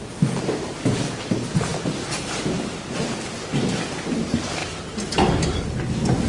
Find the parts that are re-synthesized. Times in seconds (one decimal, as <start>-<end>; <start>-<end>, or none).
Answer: 0.0-4.6